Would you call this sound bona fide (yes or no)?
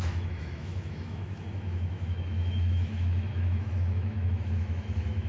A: no